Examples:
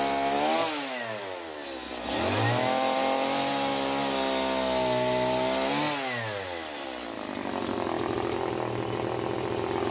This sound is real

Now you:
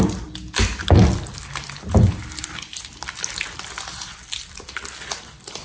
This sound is real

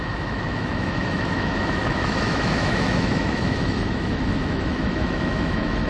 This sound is fake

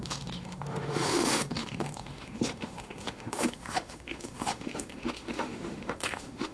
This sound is fake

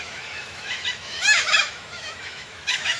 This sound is fake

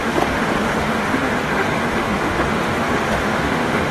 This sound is fake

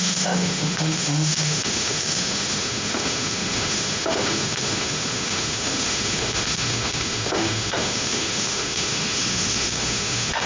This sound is fake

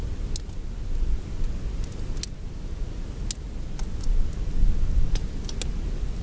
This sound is real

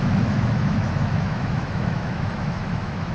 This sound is fake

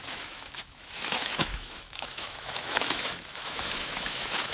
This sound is fake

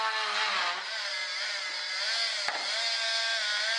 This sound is real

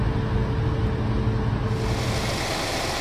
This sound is real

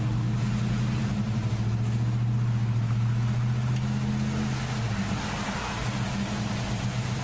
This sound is real